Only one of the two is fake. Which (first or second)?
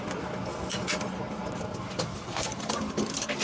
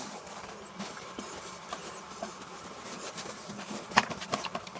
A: second